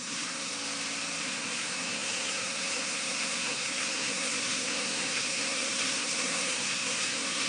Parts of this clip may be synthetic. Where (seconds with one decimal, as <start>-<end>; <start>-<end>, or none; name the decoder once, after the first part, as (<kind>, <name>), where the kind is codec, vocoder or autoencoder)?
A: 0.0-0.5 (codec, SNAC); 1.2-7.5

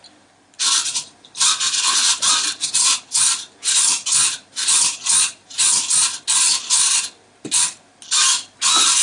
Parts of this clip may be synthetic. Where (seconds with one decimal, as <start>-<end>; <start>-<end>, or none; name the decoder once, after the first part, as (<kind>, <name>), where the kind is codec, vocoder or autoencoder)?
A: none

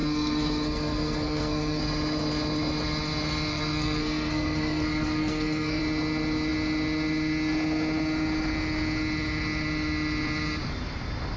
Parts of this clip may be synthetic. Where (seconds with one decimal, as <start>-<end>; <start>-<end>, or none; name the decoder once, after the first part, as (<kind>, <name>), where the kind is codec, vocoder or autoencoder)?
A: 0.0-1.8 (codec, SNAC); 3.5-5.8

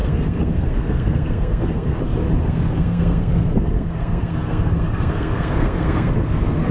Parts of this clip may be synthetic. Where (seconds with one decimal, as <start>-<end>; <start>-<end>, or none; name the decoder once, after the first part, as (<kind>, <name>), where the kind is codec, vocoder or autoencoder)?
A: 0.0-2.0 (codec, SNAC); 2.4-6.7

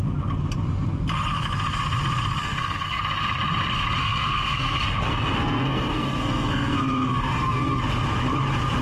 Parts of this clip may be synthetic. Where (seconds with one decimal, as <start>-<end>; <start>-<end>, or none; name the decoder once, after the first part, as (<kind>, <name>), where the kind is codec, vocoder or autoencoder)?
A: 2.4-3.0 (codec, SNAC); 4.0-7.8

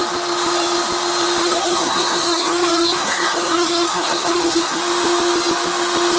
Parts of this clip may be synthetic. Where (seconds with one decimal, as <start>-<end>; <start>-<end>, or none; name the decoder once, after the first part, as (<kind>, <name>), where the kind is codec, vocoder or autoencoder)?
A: 1.4-4.8 (codec, SNAC)

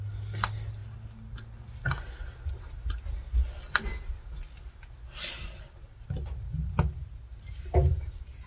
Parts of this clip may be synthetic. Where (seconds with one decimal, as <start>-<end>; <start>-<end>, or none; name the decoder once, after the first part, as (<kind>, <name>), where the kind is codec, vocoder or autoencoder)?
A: none

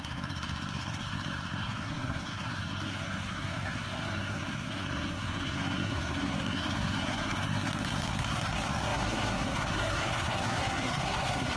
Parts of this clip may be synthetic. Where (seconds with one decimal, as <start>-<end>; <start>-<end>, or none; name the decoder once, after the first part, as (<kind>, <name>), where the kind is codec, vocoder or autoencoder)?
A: 0.0-11.6 (codec, SNAC)